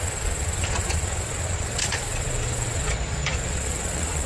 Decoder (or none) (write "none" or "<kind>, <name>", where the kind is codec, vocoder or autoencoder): vocoder, Vocos